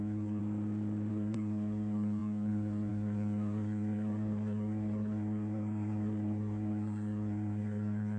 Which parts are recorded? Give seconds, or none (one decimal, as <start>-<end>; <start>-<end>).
0.4-1.1